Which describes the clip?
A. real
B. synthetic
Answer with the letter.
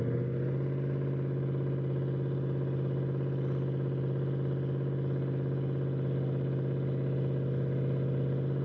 A